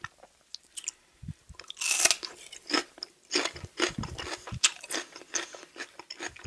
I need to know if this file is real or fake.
real